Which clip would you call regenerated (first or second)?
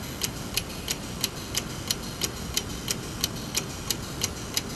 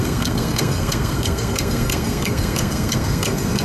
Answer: second